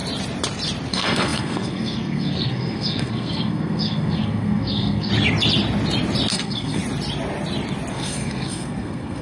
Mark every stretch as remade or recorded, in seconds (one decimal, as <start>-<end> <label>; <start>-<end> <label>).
0.0-0.9 recorded; 0.9-5.1 remade; 5.1-6.3 recorded; 6.3-6.8 remade; 6.8-7.9 recorded; 7.9-9.2 remade